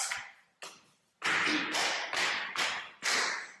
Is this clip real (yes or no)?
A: yes